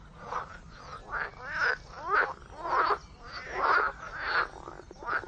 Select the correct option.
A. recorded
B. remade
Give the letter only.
A